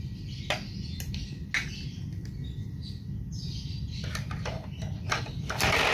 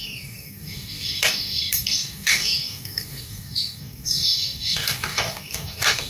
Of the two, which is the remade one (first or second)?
second